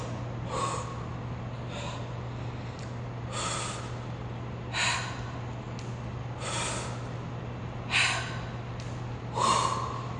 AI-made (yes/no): no